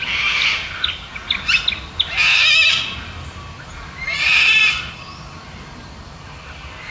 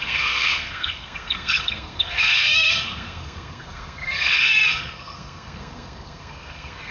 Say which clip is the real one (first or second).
first